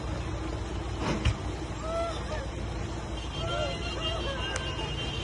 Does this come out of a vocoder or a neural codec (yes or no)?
no